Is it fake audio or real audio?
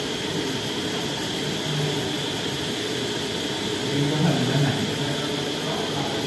real